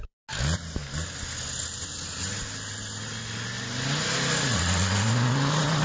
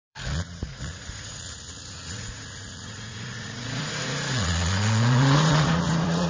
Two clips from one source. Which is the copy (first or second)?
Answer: second